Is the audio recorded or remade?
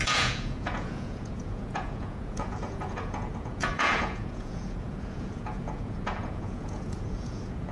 remade